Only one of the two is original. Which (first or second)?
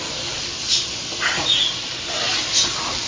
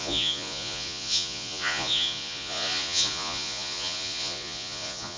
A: first